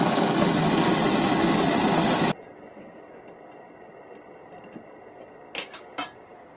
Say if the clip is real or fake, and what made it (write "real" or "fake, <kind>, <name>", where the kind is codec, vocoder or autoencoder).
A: real